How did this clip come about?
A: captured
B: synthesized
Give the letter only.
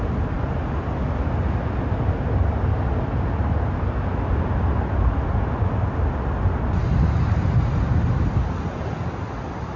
A